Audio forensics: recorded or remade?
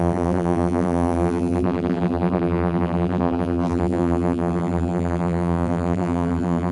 remade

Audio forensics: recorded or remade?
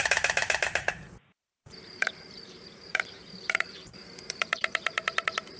remade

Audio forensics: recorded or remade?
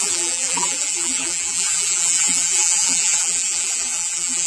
remade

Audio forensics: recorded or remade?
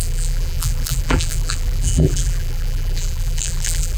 remade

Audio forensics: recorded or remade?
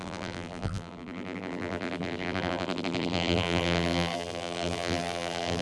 remade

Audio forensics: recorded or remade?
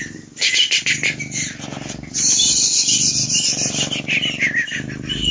remade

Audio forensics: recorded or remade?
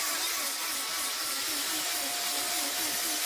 recorded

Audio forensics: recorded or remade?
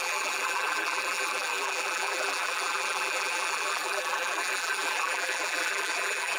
remade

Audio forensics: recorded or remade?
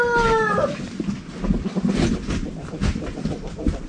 recorded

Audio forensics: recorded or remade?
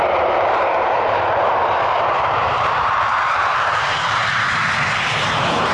remade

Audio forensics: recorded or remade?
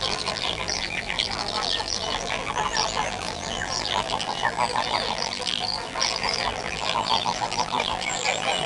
remade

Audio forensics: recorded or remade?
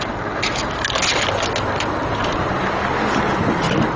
recorded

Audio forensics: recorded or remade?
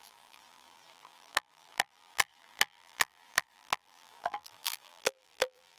remade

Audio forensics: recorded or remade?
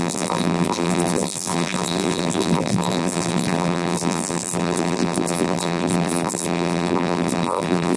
remade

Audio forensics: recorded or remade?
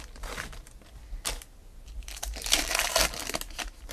recorded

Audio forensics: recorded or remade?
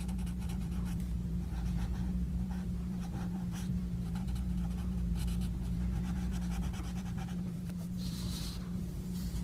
remade